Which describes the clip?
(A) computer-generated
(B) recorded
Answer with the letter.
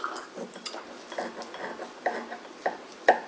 B